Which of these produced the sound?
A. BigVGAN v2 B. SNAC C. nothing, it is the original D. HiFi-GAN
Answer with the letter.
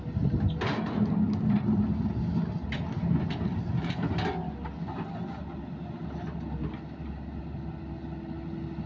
C